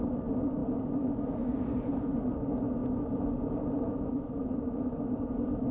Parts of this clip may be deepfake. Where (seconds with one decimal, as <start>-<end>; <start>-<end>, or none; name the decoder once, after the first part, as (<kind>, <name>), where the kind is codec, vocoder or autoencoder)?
none